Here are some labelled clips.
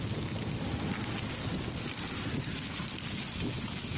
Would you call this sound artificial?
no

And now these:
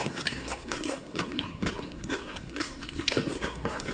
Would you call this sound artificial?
yes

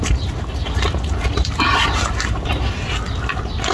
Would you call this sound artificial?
no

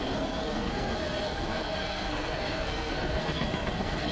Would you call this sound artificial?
yes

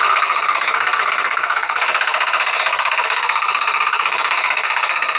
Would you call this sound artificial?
yes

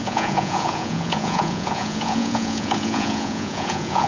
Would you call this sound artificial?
yes